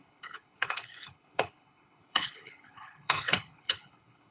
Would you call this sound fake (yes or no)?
yes